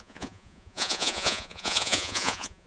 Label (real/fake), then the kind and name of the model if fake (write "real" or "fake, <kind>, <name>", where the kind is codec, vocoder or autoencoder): fake, vocoder, Vocos